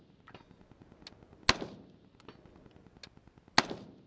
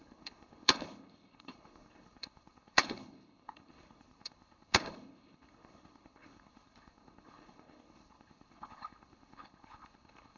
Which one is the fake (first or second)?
second